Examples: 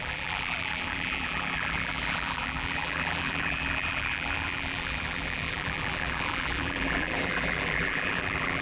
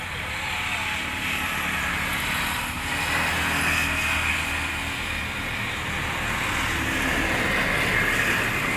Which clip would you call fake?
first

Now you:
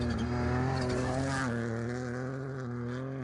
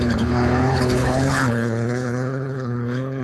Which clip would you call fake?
second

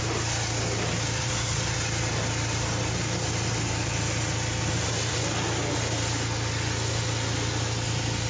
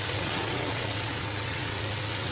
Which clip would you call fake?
second